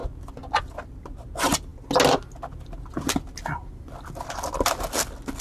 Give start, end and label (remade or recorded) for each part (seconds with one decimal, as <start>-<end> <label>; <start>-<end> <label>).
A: 0.0-5.4 recorded